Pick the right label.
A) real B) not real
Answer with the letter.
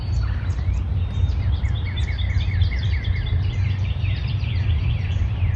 B